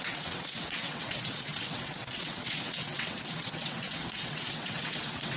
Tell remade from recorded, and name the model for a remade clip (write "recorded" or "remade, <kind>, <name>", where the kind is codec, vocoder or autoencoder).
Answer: remade, vocoder, WaveNeXt